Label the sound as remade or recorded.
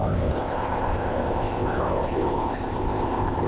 remade